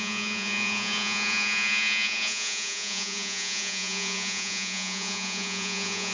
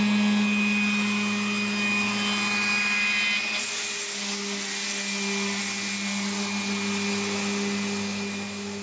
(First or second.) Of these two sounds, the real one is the second